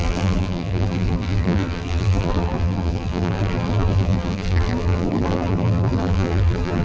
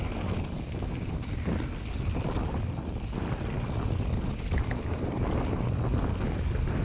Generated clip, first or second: first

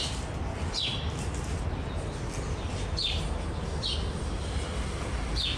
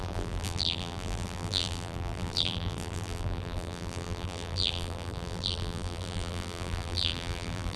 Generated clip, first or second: second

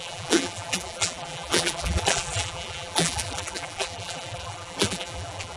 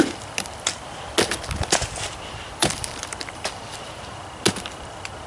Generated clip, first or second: first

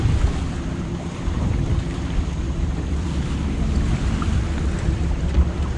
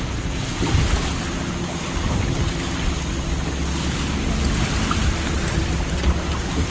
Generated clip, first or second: first